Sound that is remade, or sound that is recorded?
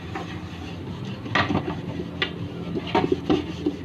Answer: recorded